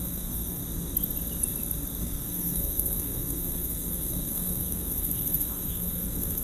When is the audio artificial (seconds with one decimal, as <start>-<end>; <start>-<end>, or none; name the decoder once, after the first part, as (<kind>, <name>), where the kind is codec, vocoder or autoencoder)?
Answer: 0.0-0.6 (codec, SNAC); 2.0-6.4